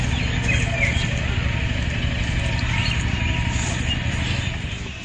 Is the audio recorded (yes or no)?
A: yes